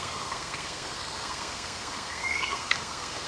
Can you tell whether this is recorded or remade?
remade